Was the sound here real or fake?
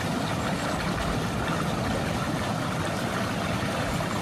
real